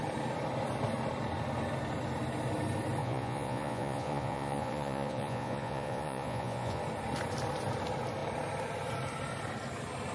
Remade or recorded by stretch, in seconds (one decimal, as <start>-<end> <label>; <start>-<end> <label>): 0.0-3.0 recorded; 3.0-6.8 remade; 6.8-10.1 recorded